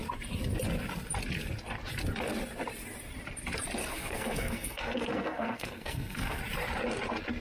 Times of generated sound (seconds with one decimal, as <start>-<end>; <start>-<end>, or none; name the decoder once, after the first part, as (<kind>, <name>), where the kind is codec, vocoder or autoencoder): 3.8-6.4 (codec, SNAC)